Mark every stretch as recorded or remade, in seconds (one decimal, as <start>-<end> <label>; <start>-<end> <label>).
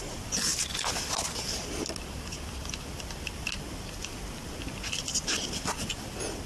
0.0-6.5 recorded